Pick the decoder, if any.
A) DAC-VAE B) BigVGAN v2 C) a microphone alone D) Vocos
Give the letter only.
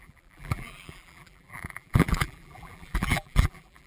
B